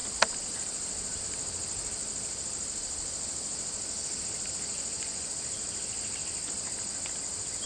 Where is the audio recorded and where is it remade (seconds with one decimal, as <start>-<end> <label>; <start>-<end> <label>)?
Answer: 0.0-4.7 recorded; 4.7-5.3 remade; 5.3-7.7 recorded